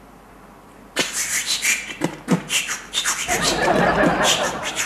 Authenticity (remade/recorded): recorded